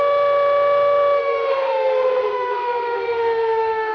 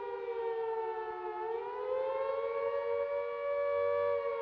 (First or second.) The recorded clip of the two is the second